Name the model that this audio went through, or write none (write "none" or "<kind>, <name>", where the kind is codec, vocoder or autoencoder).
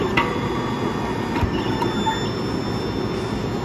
none